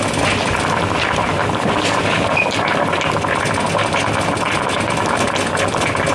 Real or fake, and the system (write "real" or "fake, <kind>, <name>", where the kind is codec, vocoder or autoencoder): real